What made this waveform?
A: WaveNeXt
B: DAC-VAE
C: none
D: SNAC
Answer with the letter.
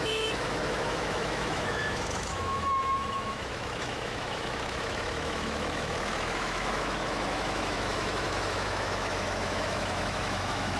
B